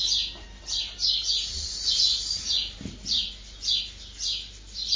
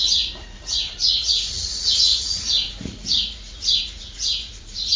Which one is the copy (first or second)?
second